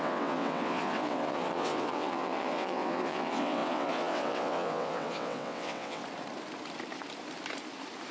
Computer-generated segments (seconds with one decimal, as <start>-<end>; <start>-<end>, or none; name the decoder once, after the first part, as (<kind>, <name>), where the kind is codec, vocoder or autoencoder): 0.0-6.0 (vocoder, WaveNeXt)